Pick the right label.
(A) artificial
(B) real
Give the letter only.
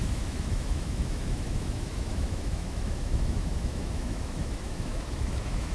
A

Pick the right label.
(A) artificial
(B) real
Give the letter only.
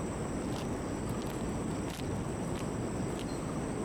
B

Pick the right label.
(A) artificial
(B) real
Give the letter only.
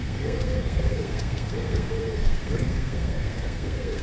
A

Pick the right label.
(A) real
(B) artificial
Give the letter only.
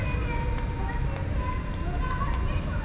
A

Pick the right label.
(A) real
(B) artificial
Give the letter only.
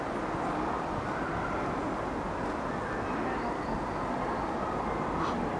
A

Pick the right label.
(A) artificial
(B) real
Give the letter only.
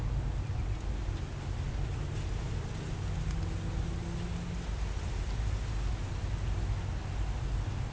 B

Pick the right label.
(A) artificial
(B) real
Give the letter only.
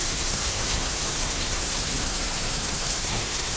A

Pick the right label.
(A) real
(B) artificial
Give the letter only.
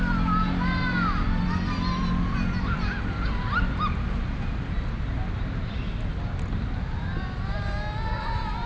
A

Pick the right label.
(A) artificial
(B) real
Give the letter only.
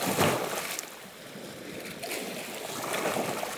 B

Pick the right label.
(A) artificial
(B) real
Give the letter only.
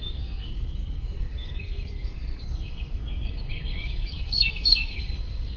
A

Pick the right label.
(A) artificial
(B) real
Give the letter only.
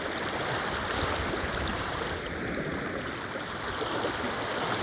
B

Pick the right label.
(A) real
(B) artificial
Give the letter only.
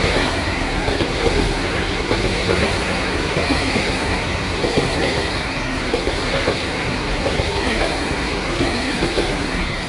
B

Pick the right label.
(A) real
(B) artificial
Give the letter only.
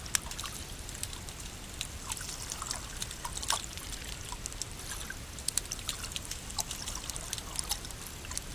A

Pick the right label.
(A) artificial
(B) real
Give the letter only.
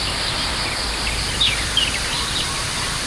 A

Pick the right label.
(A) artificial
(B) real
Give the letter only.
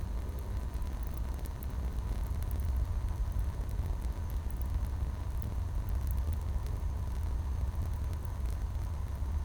B